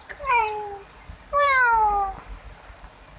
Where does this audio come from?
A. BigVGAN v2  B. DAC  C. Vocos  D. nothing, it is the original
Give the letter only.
A